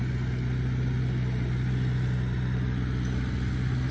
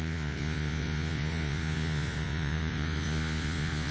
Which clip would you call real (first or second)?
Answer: first